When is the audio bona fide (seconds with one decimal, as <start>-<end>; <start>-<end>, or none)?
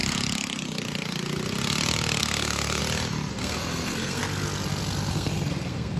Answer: 0.0-2.2; 2.8-3.3; 4.2-5.1